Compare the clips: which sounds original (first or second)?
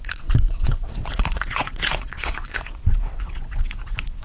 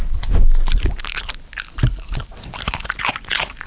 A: second